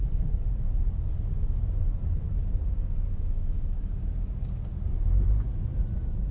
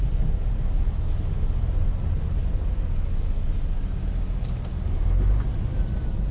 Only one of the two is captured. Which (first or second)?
second